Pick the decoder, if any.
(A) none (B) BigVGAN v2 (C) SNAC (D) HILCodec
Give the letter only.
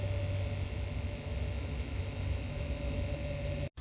A